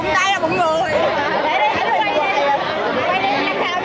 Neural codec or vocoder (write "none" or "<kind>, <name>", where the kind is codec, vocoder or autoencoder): none